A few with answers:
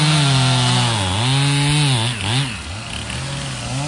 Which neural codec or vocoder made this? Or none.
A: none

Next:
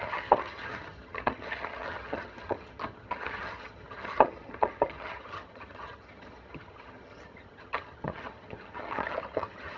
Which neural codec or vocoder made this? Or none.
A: vocoder, HiFi-GAN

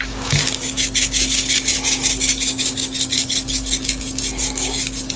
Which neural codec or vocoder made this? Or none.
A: codec, DAC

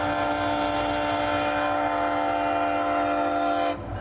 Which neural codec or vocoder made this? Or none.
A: none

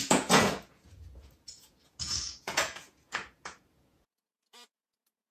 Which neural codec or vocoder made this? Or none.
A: vocoder, Vocos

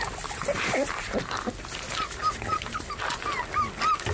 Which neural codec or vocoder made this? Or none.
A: none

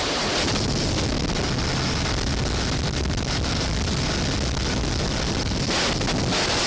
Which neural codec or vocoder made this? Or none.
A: none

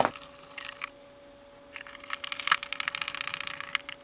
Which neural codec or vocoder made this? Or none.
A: none